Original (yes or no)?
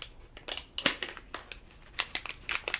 yes